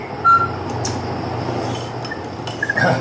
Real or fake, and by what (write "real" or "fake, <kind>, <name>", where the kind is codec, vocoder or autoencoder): real